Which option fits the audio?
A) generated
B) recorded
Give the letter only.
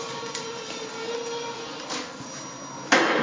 B